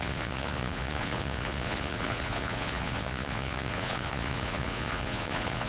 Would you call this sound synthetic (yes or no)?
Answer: yes